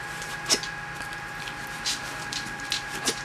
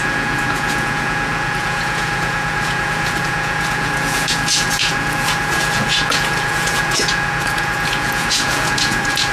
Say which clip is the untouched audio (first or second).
first